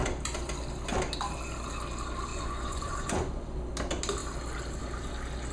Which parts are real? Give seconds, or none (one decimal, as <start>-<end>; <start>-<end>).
0.0-2.3; 3.6-5.5